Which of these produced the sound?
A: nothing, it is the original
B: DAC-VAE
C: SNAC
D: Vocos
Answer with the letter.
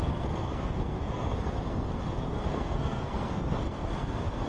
C